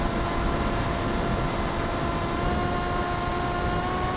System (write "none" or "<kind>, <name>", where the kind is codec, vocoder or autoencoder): none